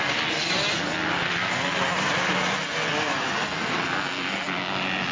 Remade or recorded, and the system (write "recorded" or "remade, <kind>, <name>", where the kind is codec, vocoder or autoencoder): recorded